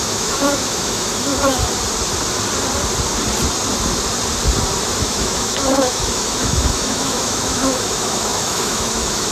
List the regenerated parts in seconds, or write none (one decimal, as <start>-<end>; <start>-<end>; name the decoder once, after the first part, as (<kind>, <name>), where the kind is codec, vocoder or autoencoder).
0.0-1.3 (autoencoder, DAC-VAE); 5.0-9.3